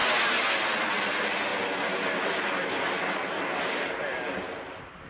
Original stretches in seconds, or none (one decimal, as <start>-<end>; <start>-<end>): 0.0-5.1